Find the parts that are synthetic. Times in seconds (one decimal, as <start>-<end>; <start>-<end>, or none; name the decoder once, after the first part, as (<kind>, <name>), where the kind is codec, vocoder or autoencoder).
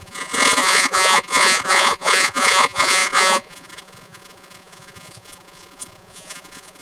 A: 0.0-6.8 (vocoder, Vocos)